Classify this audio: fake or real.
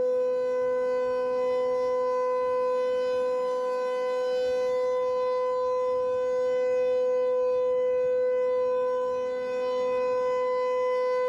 real